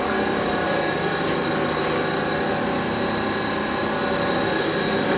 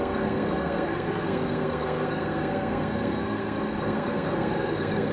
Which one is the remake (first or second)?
second